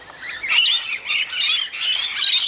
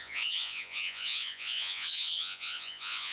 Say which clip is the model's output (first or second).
second